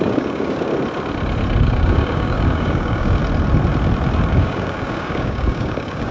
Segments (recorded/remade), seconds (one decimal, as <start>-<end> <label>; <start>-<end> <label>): 0.0-0.7 remade; 0.7-1.6 recorded; 1.6-3.2 remade; 3.2-4.3 recorded; 4.3-6.1 remade